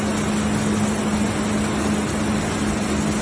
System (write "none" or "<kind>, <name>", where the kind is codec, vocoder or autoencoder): none